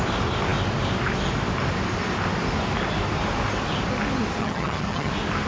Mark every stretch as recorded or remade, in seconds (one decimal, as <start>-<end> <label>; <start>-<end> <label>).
0.0-4.4 recorded; 4.4-5.1 remade; 5.1-5.5 recorded